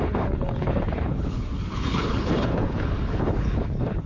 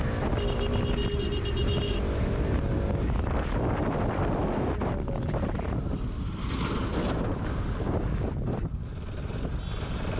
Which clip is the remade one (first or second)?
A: first